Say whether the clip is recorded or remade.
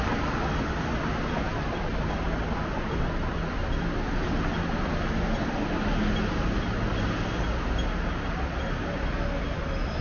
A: recorded